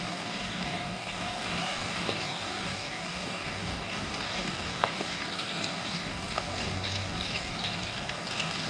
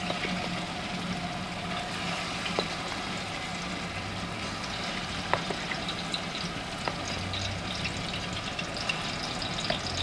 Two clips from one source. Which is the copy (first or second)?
first